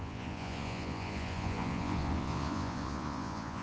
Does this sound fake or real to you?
fake